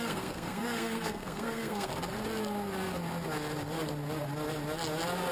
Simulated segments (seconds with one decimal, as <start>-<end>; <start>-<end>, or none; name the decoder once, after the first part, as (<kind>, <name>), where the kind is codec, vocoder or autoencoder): 0.0-1.9 (codec, SNAC)